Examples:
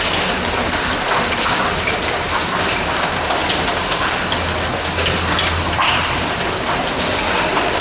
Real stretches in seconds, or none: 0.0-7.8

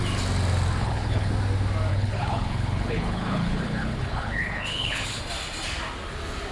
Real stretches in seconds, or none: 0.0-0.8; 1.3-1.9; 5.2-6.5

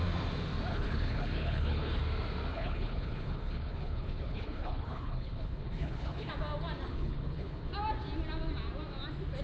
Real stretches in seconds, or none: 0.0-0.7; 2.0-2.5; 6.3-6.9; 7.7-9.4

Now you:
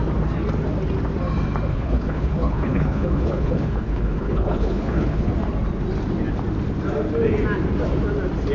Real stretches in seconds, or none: 0.0-1.7; 5.3-8.5

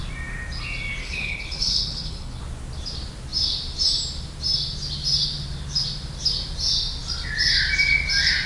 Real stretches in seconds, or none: 0.0-1.0; 2.4-8.5

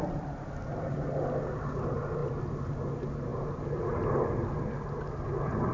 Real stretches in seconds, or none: 0.0-5.7